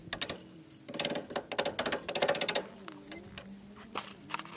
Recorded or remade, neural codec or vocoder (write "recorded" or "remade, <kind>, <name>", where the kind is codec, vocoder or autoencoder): recorded